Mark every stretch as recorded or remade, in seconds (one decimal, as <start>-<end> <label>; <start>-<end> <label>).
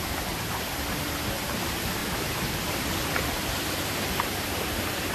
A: 0.0-5.1 recorded